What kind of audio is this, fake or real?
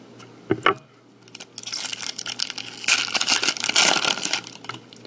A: real